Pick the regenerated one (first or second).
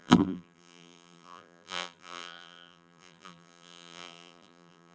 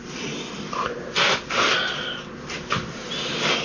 first